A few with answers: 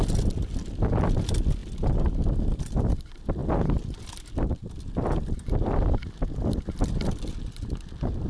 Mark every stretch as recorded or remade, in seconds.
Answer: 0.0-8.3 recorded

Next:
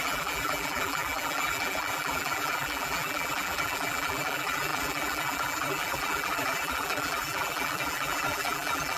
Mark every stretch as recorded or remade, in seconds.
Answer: 0.0-9.0 remade

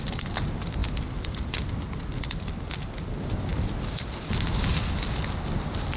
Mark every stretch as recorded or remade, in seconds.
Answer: 0.0-6.0 recorded

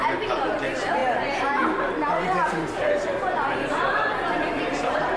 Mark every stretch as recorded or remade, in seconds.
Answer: 0.0-5.2 remade